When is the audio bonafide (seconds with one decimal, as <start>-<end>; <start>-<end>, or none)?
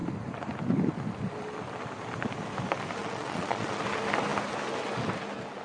0.0-3.0; 3.8-5.6